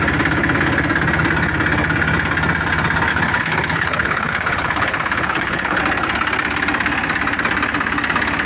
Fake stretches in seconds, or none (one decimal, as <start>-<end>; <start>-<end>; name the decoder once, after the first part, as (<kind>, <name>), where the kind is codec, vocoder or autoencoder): 3.1-5.8 (codec, HILCodec)